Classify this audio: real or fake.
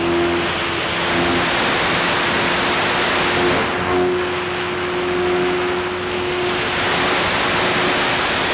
real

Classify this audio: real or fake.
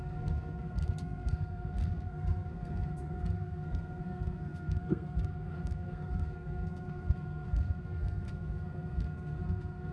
fake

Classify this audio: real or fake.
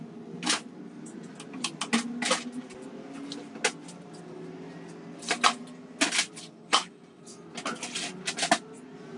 real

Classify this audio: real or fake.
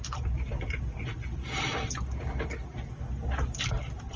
real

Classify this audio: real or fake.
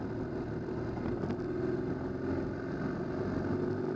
real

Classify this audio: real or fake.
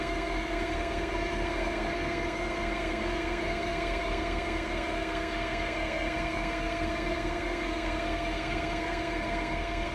fake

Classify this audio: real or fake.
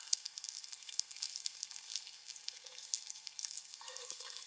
fake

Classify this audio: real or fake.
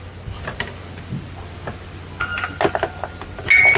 real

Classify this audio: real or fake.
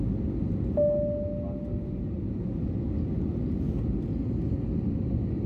real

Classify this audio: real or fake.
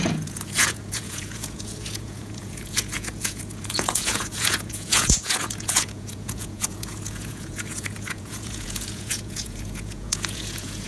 fake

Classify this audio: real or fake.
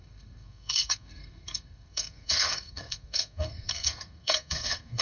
fake